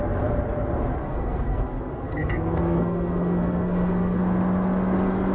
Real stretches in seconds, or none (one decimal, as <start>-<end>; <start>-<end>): 0.0-1.0; 4.2-5.3